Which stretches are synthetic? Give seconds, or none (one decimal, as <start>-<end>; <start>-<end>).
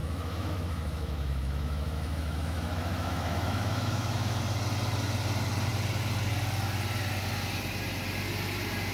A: 0.0-4.4